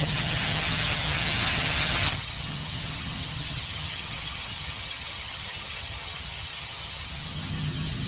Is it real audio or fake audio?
fake